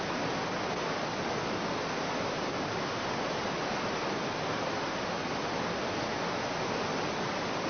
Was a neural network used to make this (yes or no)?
no